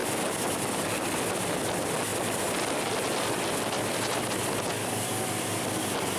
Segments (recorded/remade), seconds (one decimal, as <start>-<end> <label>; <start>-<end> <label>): 0.0-6.2 recorded